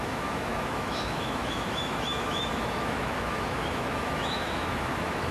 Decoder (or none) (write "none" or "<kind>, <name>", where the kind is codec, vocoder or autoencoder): autoencoder, DAC-VAE